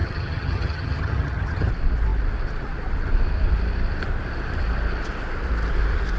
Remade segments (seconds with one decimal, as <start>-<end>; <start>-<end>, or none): 0.0-1.7